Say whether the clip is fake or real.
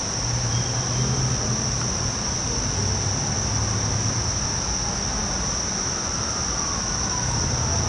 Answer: real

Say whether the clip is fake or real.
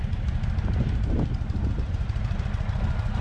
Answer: real